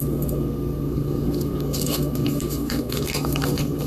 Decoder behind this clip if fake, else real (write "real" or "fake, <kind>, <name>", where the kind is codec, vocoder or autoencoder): fake, codec, SNAC